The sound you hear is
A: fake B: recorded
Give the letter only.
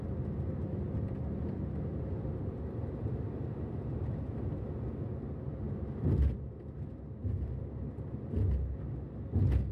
B